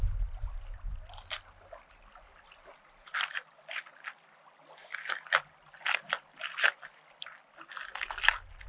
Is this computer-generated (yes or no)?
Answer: no